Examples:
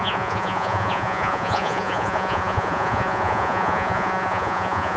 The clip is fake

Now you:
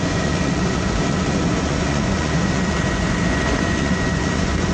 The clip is fake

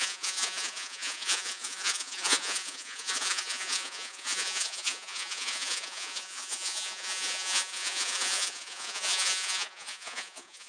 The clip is fake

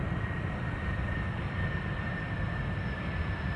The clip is fake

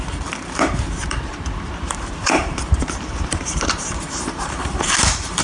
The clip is fake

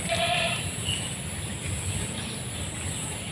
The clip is real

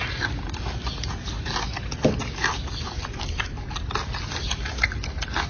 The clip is real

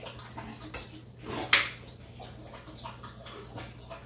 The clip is real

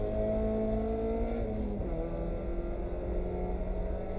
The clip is real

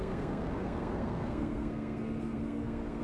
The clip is fake